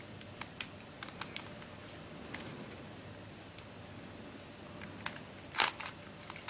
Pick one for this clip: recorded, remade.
recorded